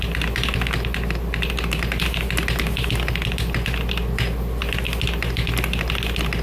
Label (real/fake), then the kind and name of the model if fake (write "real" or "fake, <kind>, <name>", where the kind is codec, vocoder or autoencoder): real